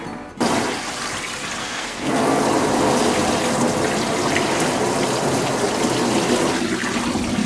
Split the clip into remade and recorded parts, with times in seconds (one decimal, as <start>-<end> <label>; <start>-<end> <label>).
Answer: 0.0-1.6 recorded; 1.6-2.4 remade; 2.4-7.5 recorded